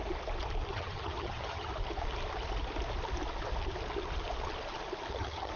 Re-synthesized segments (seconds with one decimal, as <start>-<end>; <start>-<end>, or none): 0.7-1.7; 5.1-5.6